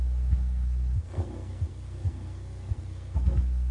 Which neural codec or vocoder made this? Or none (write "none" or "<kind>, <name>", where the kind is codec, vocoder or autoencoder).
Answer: codec, SNAC